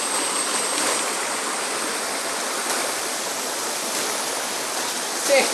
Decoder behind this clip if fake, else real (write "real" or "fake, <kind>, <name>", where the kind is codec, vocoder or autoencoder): real